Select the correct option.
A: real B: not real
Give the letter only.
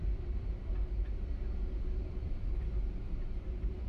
B